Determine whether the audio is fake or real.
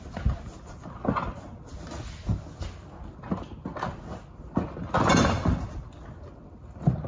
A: real